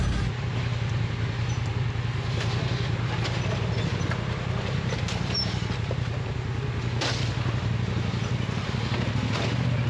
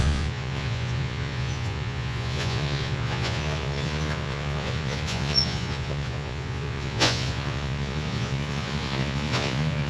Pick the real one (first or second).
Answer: first